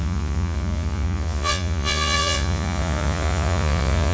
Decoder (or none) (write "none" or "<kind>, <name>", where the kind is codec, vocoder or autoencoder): vocoder, Vocos